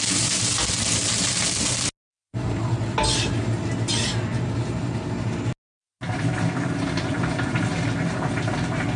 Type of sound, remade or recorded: recorded